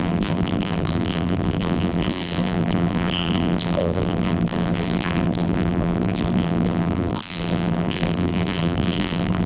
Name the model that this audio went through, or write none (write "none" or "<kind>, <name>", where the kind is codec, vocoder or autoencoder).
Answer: vocoder, BigVGAN v2